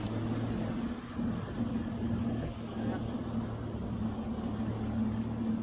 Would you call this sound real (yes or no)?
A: yes